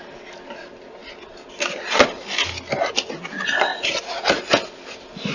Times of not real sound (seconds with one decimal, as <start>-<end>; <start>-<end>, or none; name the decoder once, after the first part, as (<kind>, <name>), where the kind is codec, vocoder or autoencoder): 3.7-4.4 (vocoder, Vocos)